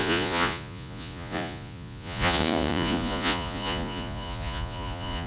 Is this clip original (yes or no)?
no